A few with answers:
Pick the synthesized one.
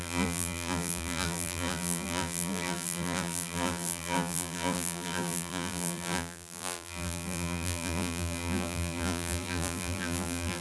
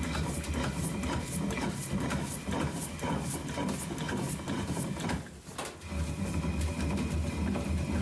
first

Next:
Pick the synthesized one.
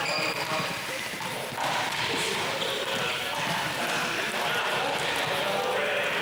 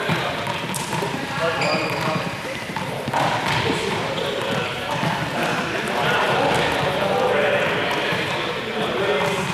second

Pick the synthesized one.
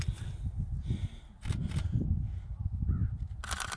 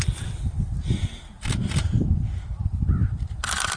second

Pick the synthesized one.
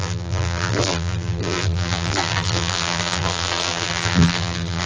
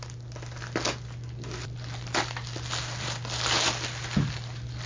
first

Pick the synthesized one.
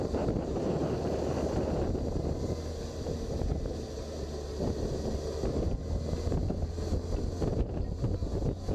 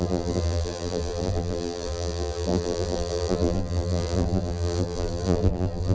second